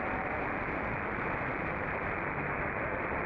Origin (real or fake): real